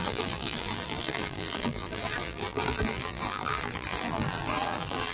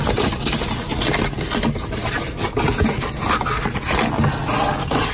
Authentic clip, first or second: second